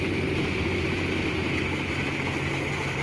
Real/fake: real